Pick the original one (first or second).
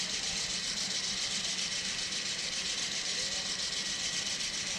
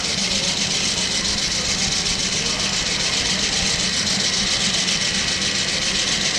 second